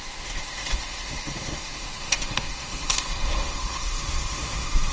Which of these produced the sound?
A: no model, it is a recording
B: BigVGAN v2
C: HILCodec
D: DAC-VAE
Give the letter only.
D